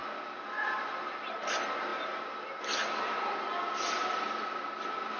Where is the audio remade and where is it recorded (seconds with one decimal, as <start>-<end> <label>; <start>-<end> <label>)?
0.0-5.2 recorded